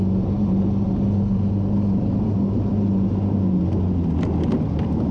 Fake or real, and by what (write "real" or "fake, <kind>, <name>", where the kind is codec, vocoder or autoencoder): real